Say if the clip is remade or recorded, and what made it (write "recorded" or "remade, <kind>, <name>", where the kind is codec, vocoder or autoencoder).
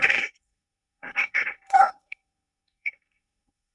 remade, codec, SNAC